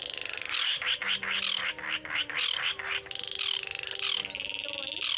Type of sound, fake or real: real